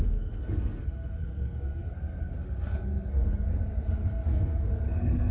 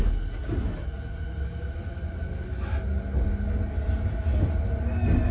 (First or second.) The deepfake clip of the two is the first